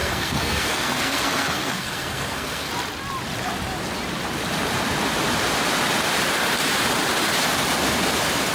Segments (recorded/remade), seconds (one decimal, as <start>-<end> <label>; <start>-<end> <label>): 0.0-2.7 remade; 2.7-8.5 recorded